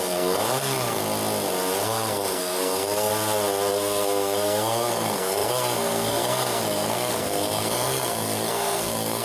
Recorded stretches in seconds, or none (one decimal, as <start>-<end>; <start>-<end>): 1.0-1.8; 3.1-3.7